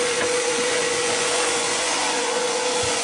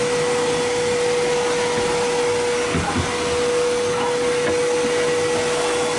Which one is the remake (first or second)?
first